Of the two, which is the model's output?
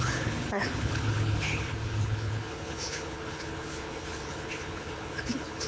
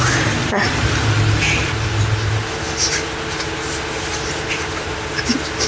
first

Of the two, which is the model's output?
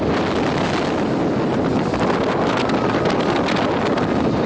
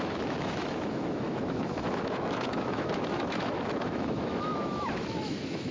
second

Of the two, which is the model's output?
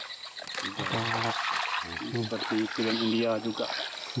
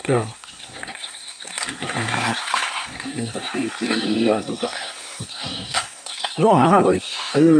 second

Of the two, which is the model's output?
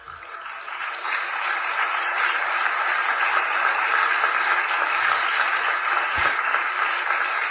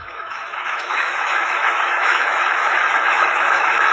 second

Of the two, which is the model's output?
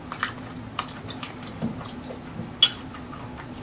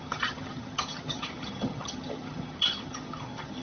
second